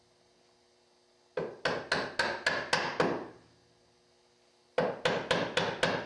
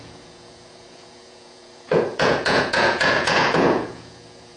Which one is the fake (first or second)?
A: second